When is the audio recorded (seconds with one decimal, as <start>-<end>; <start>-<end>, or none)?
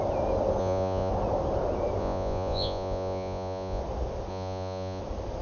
0.0-0.6; 1.1-2.0; 3.8-4.3; 5.0-5.4